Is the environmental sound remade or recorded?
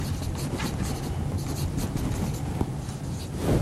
recorded